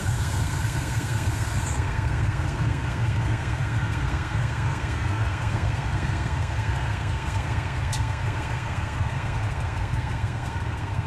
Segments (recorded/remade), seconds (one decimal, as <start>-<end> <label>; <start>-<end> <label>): 0.0-11.1 remade